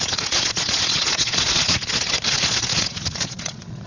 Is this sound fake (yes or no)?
yes